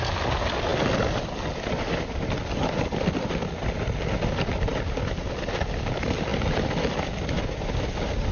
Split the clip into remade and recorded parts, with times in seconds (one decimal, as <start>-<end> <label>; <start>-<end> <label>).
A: 0.0-8.3 recorded